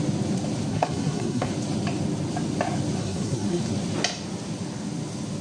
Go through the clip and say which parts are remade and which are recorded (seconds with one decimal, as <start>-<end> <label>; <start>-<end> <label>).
0.0-0.7 recorded; 0.7-1.5 remade; 1.5-3.0 recorded; 3.0-3.6 remade; 3.6-5.4 recorded